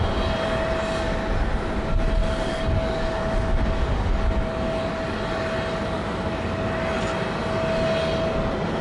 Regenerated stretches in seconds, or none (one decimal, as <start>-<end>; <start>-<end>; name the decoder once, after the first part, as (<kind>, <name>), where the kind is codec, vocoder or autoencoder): 2.2-4.9 (codec, DAC)

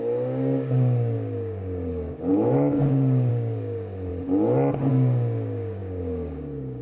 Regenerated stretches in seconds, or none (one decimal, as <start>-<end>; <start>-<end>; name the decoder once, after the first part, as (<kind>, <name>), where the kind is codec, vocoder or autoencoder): 0.0-4.1 (codec, DAC); 4.9-6.8

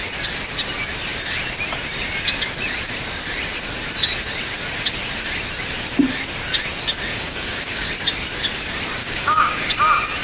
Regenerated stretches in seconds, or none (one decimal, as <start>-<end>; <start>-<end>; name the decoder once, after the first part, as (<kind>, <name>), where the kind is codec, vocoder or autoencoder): 7.1-7.9 (codec, DAC); 9.0-9.7

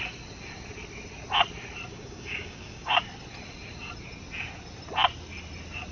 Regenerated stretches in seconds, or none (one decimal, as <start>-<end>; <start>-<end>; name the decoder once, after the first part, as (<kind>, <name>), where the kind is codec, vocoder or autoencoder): 1.9-3.0 (codec, DAC)

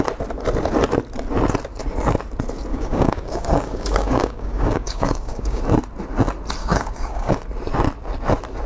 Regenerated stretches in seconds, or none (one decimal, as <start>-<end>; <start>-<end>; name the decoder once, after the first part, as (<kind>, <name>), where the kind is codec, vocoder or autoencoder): 2.7-5.6 (codec, DAC); 6.6-7.4

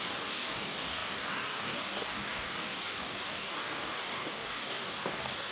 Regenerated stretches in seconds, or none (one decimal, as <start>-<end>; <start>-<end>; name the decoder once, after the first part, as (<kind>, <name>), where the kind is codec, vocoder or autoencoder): 0.0-5.5 (codec, DAC)

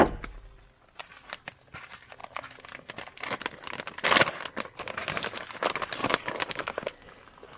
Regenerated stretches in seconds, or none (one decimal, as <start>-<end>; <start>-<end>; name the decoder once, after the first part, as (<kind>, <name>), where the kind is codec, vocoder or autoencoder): 6.0-6.6 (codec, DAC)

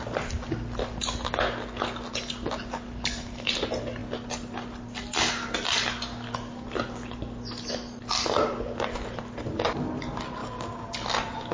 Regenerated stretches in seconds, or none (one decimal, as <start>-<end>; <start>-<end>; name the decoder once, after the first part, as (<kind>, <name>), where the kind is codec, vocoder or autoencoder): 10.4-10.9 (codec, DAC)